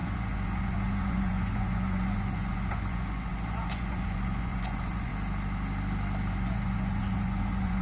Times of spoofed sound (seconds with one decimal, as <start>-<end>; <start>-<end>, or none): 0.0-5.1; 6.3-7.8